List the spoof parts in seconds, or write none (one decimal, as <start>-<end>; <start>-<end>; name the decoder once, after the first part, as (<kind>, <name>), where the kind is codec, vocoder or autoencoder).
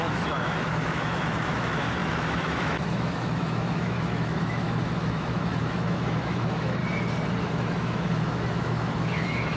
0.0-6.8 (autoencoder, DAC-VAE); 7.4-9.6